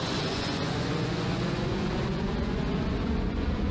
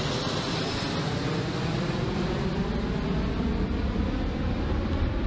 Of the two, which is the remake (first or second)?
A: first